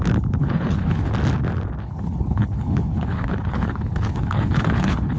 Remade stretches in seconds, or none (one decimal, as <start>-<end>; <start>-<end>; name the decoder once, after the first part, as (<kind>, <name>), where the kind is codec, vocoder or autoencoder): 0.4-1.1 (codec, HILCodec); 1.8-5.2